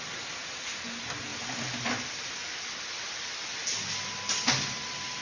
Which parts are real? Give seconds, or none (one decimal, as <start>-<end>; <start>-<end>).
0.0-1.3; 1.9-5.2